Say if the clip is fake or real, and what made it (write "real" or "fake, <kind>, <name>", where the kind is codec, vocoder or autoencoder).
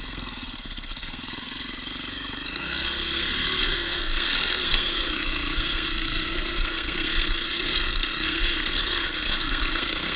fake, codec, SNAC